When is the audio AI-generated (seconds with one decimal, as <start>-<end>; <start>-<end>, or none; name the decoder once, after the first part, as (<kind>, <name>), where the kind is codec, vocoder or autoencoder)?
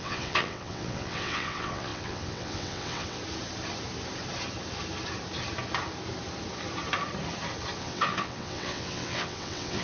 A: 0.0-3.2 (vocoder, WaveNeXt); 7.8-9.8